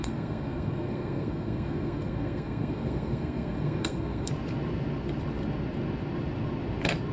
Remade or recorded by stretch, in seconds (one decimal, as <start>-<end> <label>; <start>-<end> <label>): 0.0-4.3 remade; 4.3-7.1 recorded